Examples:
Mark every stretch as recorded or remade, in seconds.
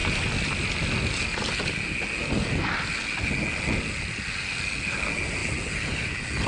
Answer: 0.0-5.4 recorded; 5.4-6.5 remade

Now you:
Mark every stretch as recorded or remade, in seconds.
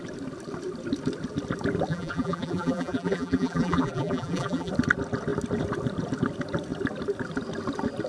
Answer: 0.0-1.9 recorded; 1.9-4.7 remade; 4.7-8.1 recorded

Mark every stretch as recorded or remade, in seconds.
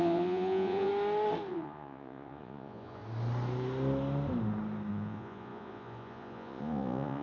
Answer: 0.0-0.9 remade; 0.9-1.5 recorded; 1.5-3.0 remade; 3.0-4.9 recorded; 4.9-7.2 remade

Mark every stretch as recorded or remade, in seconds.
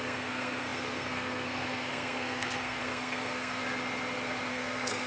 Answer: 0.0-3.6 remade; 3.6-4.5 recorded; 4.5-5.1 remade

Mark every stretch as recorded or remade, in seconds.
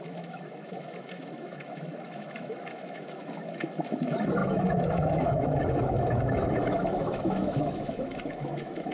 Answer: 0.0-8.9 remade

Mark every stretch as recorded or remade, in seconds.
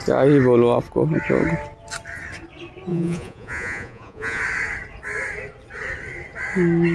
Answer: 0.0-2.9 recorded; 2.9-4.4 remade; 4.4-6.9 recorded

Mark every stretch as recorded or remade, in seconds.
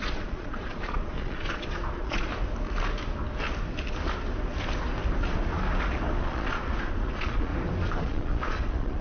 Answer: 0.0-2.3 remade; 2.3-6.2 recorded; 6.2-7.5 remade; 7.5-8.0 recorded; 8.0-9.0 remade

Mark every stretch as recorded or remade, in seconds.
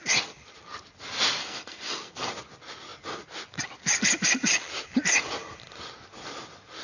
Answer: 0.0-1.4 recorded; 1.4-2.3 remade; 2.3-6.8 recorded